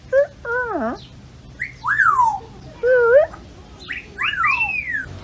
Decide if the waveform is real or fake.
real